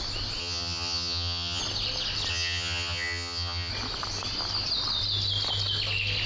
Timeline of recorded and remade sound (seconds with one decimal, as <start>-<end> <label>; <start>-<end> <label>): 0.0-0.4 recorded; 0.4-1.6 remade; 1.6-2.3 recorded; 2.3-3.7 remade; 3.7-6.3 recorded